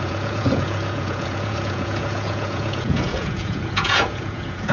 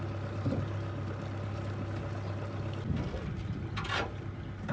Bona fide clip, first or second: second